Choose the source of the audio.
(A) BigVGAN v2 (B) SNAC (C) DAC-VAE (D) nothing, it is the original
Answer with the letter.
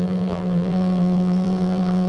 A